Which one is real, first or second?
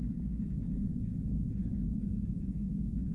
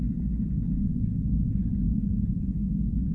second